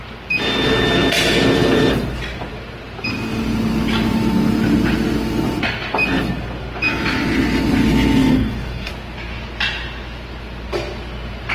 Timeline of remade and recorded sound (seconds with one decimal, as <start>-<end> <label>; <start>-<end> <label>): 0.0-8.2 recorded; 8.2-8.9 remade; 8.9-11.5 recorded